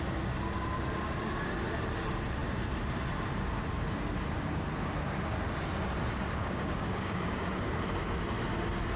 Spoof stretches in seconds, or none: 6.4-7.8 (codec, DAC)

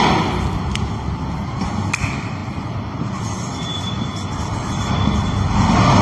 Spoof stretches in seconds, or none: 2.4-3.2 (vocoder, BigVGAN v2)

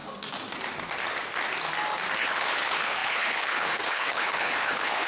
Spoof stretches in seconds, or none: 2.2-5.1 (codec, HILCodec)

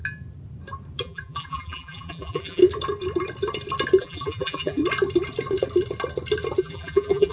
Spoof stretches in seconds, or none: 1.0-2.6 (vocoder, BigVGAN v2); 4.0-4.8; 6.6-7.3